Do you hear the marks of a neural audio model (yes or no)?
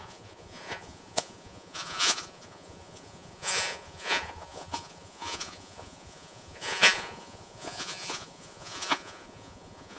yes